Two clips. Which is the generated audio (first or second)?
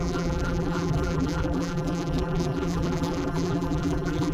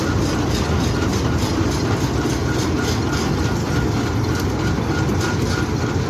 first